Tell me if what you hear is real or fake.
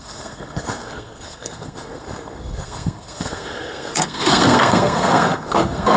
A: fake